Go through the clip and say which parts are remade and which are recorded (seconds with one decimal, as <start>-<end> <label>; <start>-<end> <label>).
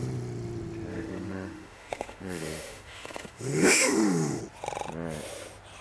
0.0-0.9 recorded; 0.9-4.4 remade; 4.4-5.8 recorded